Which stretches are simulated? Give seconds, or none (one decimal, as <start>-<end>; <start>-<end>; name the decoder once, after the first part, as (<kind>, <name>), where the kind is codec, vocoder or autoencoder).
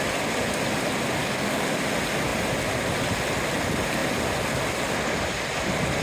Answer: 1.2-1.8 (codec, DAC)